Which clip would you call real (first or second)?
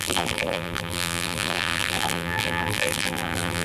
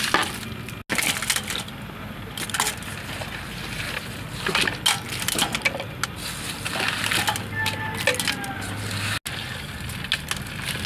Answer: second